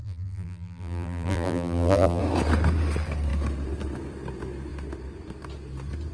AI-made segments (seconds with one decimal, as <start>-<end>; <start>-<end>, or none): 0.0-2.2